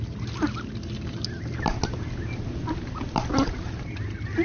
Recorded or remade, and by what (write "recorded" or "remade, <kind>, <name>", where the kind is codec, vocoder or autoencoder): recorded